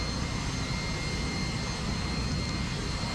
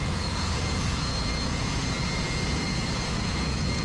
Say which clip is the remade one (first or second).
second